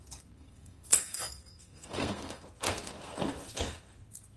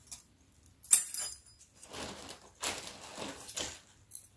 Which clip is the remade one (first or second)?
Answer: first